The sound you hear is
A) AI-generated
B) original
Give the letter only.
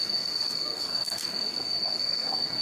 A